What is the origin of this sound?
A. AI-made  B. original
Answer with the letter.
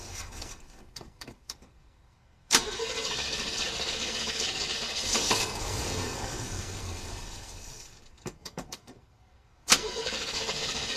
A